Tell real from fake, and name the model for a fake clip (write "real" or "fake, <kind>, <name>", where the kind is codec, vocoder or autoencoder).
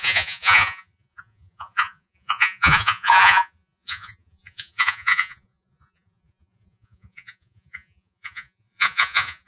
fake, vocoder, Vocos